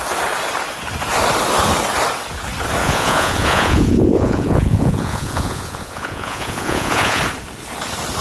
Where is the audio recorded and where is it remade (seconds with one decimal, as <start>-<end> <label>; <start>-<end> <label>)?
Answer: 0.0-2.8 recorded; 2.8-7.2 remade; 7.2-8.2 recorded